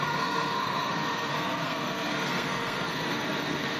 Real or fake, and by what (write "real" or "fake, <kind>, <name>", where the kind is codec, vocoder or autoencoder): fake, codec, SNAC